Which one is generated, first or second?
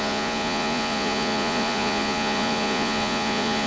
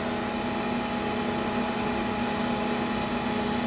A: first